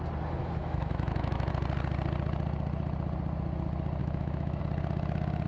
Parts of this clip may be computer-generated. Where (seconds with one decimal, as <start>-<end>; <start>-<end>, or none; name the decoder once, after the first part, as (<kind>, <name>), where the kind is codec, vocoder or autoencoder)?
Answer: 0.4-1.5 (autoencoder, DAC-VAE); 4.0-4.6